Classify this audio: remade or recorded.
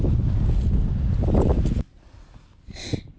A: recorded